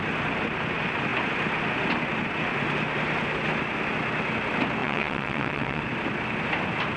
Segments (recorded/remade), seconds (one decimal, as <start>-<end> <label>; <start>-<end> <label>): 0.0-4.8 recorded; 4.8-5.8 remade; 5.8-7.0 recorded